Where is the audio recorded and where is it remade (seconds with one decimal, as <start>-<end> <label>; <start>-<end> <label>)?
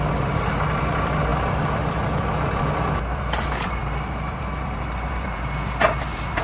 0.0-6.4 recorded